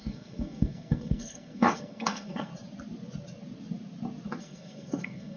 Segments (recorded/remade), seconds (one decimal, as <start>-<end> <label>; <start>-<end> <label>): 0.0-2.5 remade; 2.5-4.4 recorded; 4.4-5.4 remade